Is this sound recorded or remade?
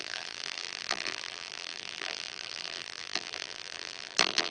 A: remade